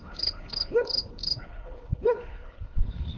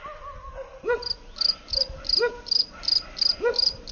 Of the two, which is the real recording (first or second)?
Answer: second